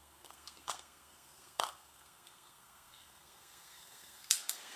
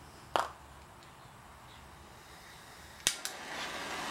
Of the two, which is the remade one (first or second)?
first